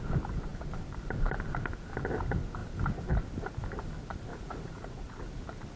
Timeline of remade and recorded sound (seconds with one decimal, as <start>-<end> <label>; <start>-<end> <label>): 0.0-4.3 recorded; 4.3-5.2 remade; 5.2-5.8 recorded